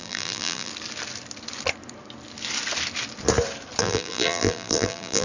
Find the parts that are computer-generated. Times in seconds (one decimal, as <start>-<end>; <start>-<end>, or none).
0.0-0.7; 3.8-5.2